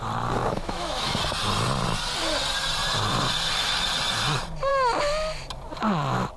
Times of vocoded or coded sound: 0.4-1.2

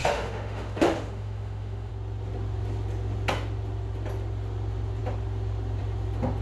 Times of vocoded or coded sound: 0.0-1.9

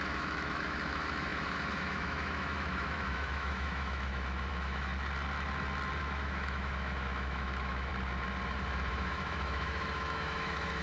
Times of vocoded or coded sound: 0.0-4.9; 6.0-7.9; 8.9-10.8

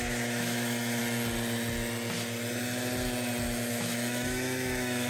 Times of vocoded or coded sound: 0.0-1.0; 3.7-5.1

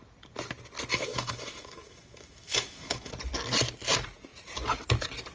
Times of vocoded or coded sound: 0.9-3.1